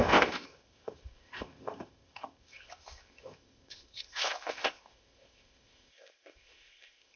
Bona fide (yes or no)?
no